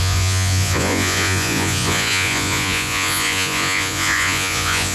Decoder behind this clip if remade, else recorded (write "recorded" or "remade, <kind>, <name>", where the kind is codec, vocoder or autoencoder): remade, vocoder, Vocos